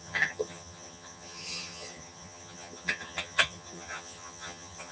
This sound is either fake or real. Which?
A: fake